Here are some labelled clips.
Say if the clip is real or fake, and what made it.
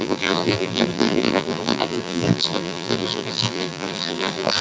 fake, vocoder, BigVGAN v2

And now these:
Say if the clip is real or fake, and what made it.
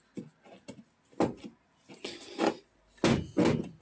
real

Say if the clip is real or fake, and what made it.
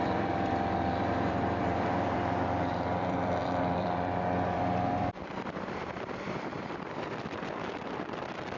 fake, vocoder, BigVGAN v2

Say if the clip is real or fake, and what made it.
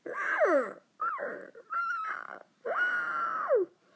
fake, vocoder, BigVGAN v2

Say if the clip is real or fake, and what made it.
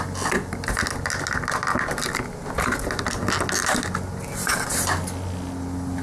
real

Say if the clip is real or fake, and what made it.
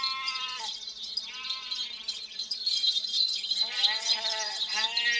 real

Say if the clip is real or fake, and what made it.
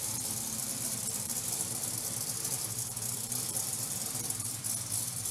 fake, vocoder, BigVGAN v2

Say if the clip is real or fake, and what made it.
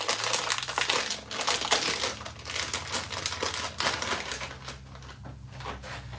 real